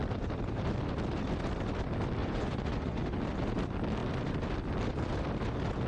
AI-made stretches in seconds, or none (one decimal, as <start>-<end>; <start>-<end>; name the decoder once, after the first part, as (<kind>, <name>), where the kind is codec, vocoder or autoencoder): 2.2-3.0 (vocoder, Vocos)